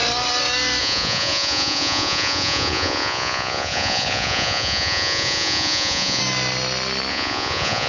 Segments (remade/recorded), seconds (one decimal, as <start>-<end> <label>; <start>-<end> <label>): 0.0-0.8 recorded; 0.8-6.2 remade; 6.2-7.1 recorded; 7.1-7.9 remade